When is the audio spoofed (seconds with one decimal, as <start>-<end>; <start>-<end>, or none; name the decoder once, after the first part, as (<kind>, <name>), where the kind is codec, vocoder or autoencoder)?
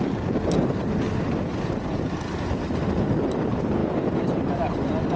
none